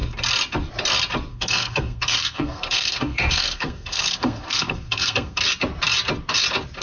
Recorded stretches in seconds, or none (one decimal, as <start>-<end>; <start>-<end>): 0.0-1.3; 5.4-6.8